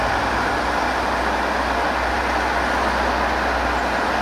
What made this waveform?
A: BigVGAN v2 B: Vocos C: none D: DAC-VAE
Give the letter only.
C